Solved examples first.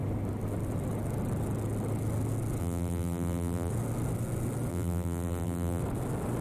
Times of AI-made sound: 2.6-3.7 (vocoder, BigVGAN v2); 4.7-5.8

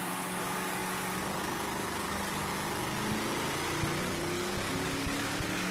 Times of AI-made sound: 0.0-2.5 (codec, DAC); 4.2-5.7

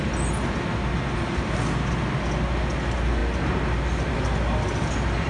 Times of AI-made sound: none

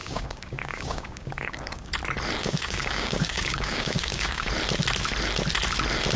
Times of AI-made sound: 0.0-1.9 (codec, DAC); 2.4-4.5

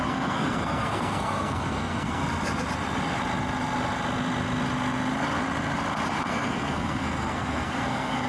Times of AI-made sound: 0.0-2.2 (codec, SNAC); 6.3-8.3